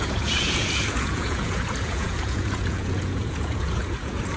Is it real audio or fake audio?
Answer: fake